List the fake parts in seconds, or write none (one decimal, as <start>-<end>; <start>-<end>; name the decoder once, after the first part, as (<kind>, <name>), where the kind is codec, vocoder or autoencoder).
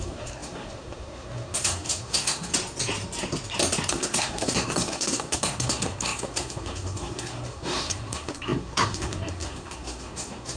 0.0-2.5 (codec, SNAC); 3.9-10.6